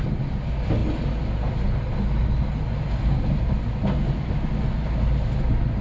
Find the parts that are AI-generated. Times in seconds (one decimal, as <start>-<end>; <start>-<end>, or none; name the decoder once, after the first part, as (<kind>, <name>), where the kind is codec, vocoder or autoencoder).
none